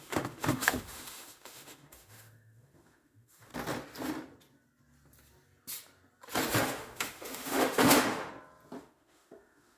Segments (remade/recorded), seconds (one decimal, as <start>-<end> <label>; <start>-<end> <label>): 0.0-3.5 remade; 3.5-6.6 recorded; 6.6-8.3 remade; 8.3-8.8 recorded; 8.8-9.8 remade